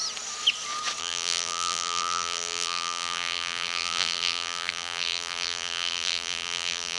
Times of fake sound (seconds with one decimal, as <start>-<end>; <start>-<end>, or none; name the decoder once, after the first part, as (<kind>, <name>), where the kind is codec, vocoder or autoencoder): 1.0-7.0 (vocoder, BigVGAN v2)